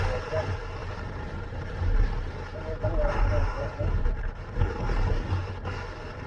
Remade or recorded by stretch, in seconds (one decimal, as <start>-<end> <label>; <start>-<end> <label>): 0.0-0.8 recorded; 0.8-4.6 remade; 4.6-6.3 recorded